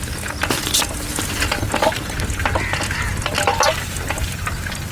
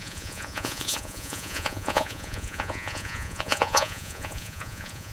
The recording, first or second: first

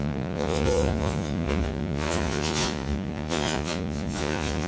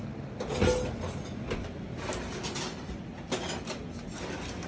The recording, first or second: second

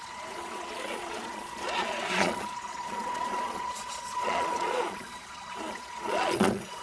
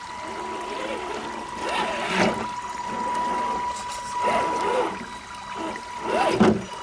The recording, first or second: second